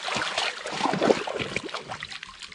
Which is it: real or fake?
real